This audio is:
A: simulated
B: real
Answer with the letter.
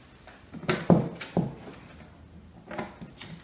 B